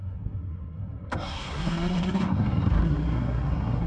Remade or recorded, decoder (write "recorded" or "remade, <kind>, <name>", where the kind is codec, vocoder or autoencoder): remade, codec, SNAC